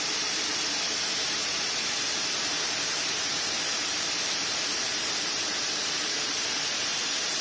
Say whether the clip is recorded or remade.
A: remade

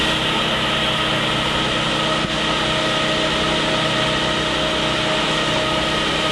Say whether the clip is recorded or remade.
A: recorded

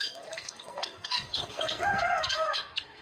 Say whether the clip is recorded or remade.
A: remade